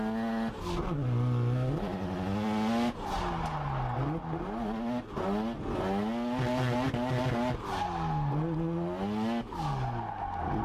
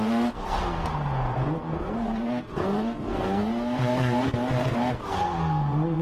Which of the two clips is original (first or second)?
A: first